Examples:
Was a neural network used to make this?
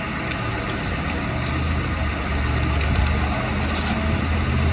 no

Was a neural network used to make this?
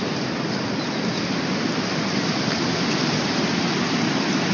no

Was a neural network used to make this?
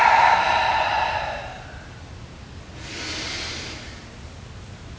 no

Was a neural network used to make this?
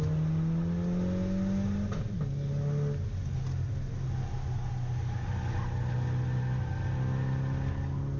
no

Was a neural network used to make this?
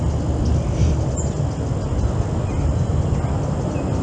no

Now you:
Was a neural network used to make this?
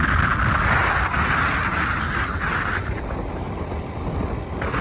no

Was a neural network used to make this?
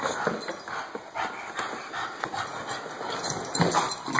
no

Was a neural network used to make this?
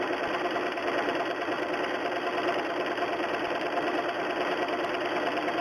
no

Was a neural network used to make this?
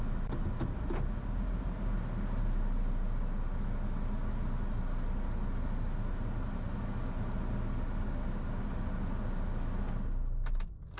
no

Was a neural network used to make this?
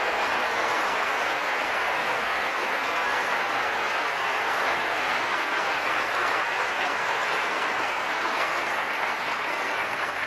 yes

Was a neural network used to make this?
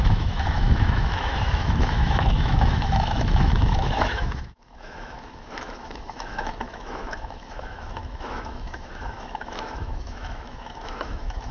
yes